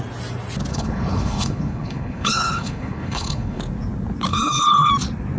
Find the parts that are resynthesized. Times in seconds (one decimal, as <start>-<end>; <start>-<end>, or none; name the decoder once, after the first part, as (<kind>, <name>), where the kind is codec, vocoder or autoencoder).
0.7-3.6 (codec, HILCodec); 4.3-4.9